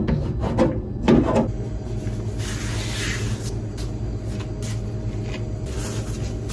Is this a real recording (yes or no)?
yes